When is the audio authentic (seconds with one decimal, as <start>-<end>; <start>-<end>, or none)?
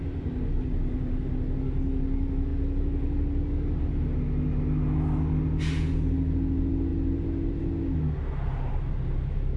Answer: 0.0-9.6